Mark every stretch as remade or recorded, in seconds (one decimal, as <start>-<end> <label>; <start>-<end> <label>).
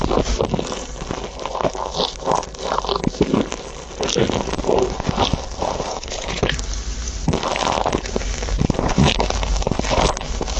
0.0-5.9 recorded; 5.9-6.5 remade; 6.5-10.6 recorded